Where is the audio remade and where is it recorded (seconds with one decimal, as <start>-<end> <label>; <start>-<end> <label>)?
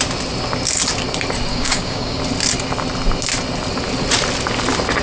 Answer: 0.0-1.5 recorded; 1.5-2.2 remade; 2.2-5.0 recorded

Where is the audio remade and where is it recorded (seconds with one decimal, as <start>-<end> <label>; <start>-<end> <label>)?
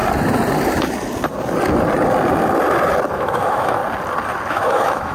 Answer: 0.0-3.1 recorded; 3.1-3.8 remade; 3.8-4.5 recorded; 4.5-5.1 remade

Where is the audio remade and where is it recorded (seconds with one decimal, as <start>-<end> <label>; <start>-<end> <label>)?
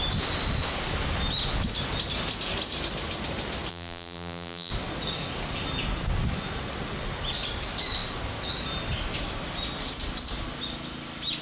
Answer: 0.0-3.7 recorded; 3.7-4.7 remade; 4.7-11.4 recorded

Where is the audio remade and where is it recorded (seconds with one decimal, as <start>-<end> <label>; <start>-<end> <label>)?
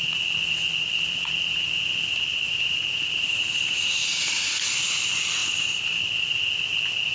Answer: 0.0-2.3 recorded; 2.3-4.5 remade; 4.5-5.4 recorded; 5.4-6.1 remade; 6.1-7.1 recorded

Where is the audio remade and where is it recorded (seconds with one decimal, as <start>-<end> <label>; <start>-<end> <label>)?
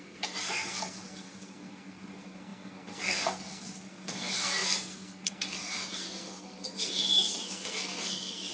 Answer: 0.0-8.5 remade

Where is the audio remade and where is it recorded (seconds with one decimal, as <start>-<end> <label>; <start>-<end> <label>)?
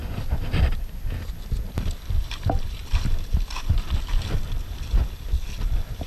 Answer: 0.0-2.2 recorded; 2.2-2.8 remade; 2.8-6.1 recorded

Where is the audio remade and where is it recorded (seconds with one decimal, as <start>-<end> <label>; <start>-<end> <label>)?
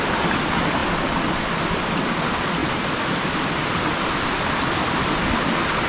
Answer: 0.0-5.9 recorded